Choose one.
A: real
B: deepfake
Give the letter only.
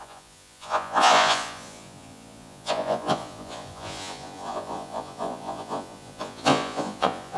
B